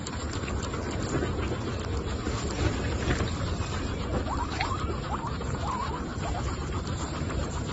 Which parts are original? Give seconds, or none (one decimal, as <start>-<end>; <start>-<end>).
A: 0.0-4.1